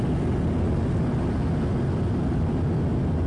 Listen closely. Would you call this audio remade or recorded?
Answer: recorded